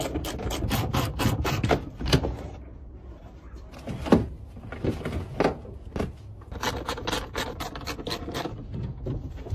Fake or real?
real